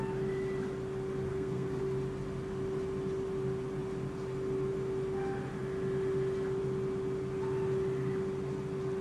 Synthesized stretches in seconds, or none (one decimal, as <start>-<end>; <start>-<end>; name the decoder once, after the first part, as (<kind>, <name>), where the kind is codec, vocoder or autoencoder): 1.3-1.8 (codec, SNAC)